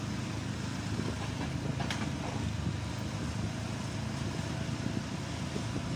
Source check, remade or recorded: recorded